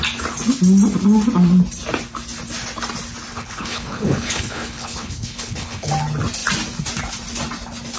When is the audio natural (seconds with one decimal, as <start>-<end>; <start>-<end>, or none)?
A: 0.0-3.3; 5.9-8.0